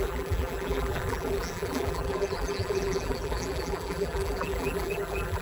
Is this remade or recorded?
remade